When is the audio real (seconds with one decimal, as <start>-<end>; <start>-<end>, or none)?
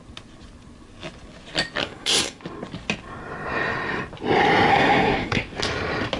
0.0-1.8; 2.4-4.7; 5.4-6.2